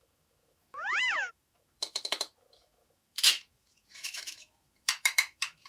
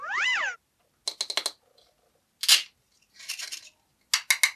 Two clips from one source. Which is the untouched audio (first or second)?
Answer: second